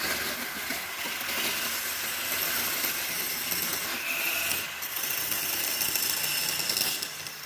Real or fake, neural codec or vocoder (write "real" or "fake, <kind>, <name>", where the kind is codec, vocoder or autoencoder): real